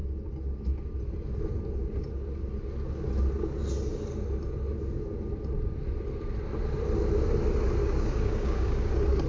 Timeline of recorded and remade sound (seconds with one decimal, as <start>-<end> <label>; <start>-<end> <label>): 0.0-7.8 recorded; 7.8-8.9 remade; 8.9-9.3 recorded